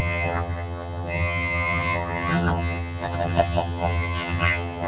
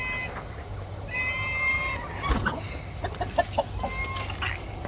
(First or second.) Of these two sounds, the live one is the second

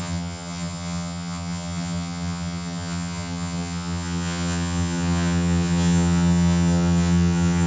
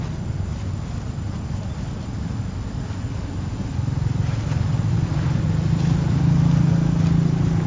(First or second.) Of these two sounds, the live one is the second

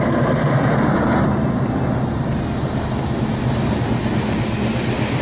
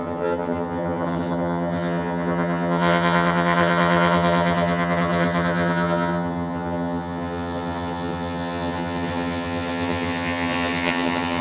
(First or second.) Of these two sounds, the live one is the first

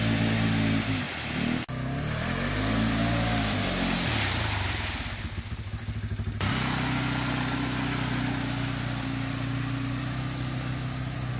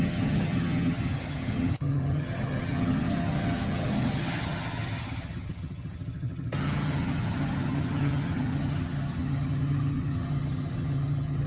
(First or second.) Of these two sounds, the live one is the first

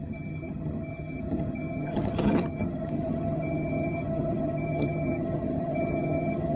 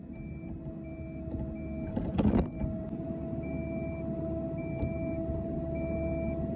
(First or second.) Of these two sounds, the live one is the second